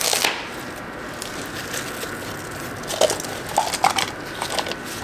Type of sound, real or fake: real